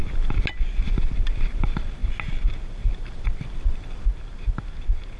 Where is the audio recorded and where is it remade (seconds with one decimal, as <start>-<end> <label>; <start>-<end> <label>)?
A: 0.0-1.1 recorded; 1.1-2.0 remade; 2.0-3.4 recorded; 3.4-4.1 remade; 4.1-5.2 recorded